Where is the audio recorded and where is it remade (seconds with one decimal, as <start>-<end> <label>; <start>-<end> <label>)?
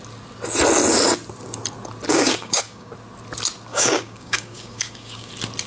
0.0-2.1 recorded; 2.1-2.9 remade; 2.9-3.7 recorded; 3.7-5.3 remade; 5.3-5.7 recorded